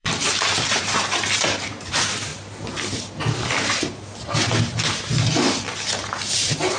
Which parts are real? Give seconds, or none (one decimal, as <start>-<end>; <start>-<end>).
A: 2.3-6.8